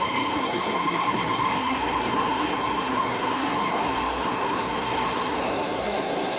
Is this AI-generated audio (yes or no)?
yes